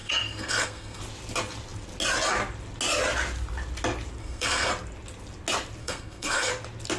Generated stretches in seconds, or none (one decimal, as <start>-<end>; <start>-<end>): 0.0-1.0; 4.2-4.7; 5.8-6.5